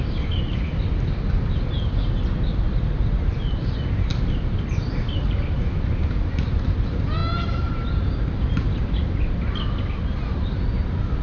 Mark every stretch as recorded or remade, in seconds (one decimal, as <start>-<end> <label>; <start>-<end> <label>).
0.0-11.2 recorded